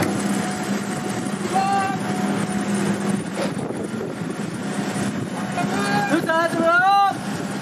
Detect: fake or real real